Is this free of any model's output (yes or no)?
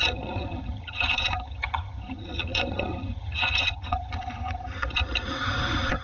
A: no